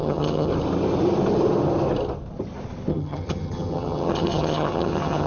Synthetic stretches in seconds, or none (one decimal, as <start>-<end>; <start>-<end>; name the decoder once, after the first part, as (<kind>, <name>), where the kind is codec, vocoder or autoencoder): 0.0-0.5 (vocoder, HiFi-GAN); 2.9-5.3